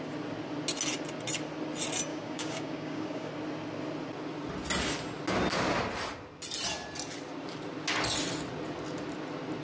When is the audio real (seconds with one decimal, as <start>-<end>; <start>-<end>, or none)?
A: 0.0-2.1; 3.3-9.6